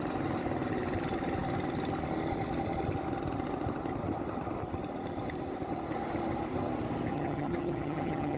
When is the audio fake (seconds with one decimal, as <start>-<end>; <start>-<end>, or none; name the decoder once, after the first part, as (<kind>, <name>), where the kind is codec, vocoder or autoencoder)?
7.1-8.4 (vocoder, HiFi-GAN)